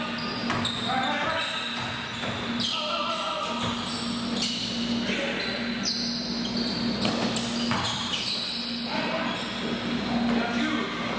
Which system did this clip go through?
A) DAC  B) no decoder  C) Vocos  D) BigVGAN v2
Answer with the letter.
B